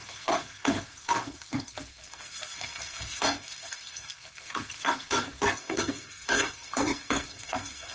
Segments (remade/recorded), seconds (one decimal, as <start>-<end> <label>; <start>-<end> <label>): 0.0-7.9 remade